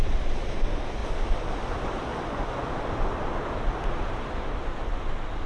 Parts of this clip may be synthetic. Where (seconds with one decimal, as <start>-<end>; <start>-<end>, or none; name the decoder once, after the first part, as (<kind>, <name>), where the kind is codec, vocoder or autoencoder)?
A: 2.1-2.7 (vocoder, Vocos)